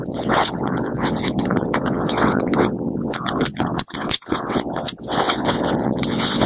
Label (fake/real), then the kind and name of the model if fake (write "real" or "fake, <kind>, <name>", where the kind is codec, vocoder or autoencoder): fake, vocoder, WaveNeXt